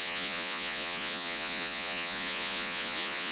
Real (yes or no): no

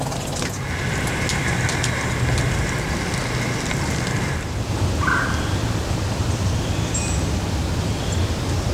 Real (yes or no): yes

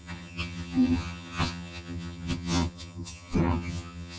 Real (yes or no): no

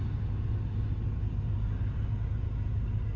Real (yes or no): yes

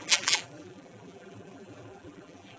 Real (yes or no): no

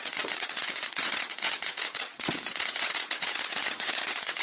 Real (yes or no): no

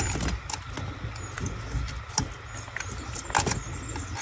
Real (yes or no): yes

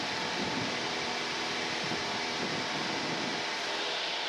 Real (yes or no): yes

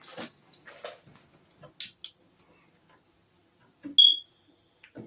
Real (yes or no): yes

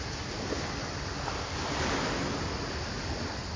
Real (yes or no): yes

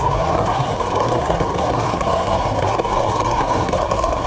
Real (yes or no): no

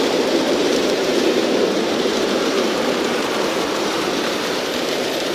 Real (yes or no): no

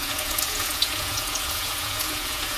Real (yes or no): no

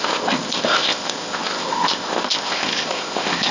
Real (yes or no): no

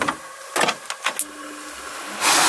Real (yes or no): yes